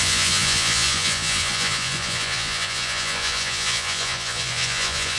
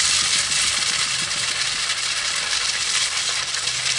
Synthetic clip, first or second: first